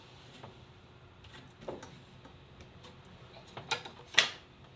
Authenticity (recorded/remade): recorded